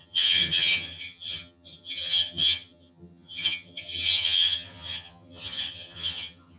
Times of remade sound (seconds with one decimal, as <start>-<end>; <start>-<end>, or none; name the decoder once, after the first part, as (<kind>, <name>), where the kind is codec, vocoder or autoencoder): 0.0-6.6 (vocoder, HiFi-GAN)